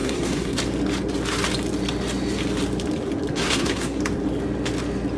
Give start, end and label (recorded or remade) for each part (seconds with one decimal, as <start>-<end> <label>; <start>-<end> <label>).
0.0-0.6 remade; 0.6-3.3 recorded; 3.3-4.0 remade; 4.0-5.2 recorded